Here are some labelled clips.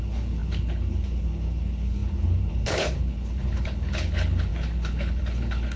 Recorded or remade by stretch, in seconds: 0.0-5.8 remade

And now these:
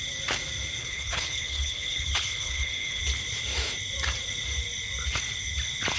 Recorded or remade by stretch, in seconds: 0.0-0.8 recorded; 0.8-3.0 remade; 3.0-6.0 recorded